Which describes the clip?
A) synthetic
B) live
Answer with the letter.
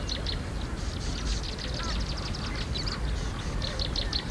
B